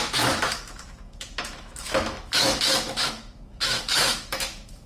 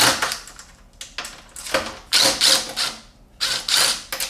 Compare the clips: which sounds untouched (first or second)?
second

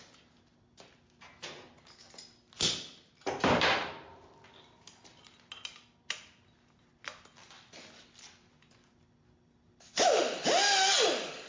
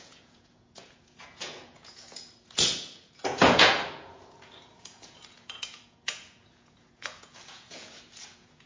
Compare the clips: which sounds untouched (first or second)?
first